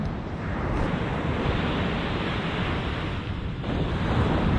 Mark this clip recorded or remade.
remade